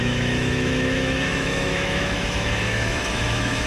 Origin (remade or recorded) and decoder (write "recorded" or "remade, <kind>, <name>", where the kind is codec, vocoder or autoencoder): remade, autoencoder, DAC-VAE